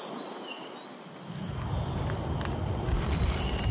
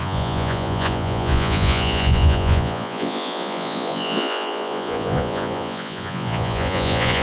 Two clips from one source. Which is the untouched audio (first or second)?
first